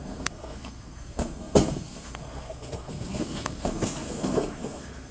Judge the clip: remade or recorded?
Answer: remade